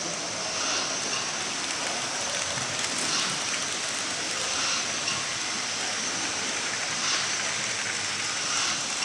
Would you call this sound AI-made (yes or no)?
no